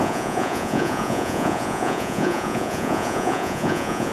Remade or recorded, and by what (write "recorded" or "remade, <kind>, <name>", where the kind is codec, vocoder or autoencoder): remade, vocoder, Vocos